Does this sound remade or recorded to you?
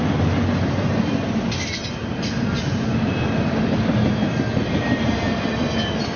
recorded